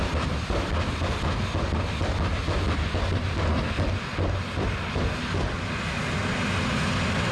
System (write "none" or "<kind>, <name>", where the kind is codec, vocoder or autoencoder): none